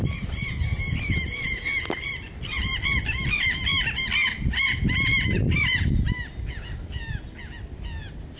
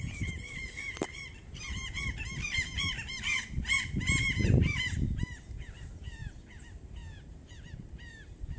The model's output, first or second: second